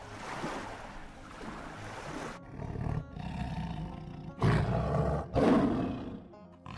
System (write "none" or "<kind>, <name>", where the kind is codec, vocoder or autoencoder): none